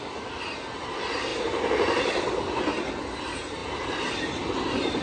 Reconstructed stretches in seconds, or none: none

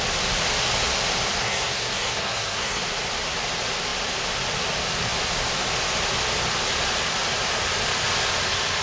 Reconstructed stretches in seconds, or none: 1.4-2.8

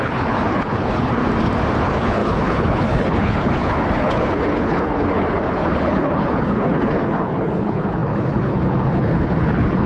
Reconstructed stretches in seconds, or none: 0.0-1.2; 1.8-9.9

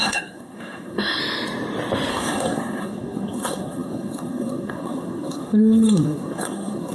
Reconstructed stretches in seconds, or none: 0.0-1.2; 2.1-6.9